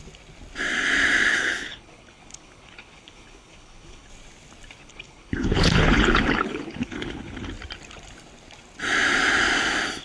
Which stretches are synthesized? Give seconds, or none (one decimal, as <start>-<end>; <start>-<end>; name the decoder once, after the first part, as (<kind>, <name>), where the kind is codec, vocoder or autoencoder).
1.3-4.1 (codec, HILCodec); 4.8-7.5